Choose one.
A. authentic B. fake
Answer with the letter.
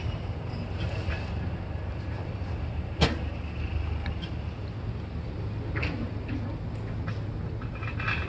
A